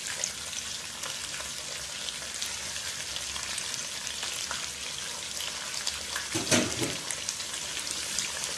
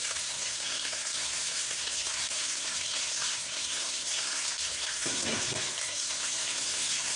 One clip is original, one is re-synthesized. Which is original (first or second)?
first